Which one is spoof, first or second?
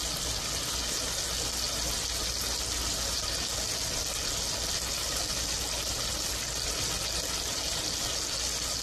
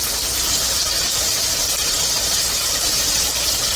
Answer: second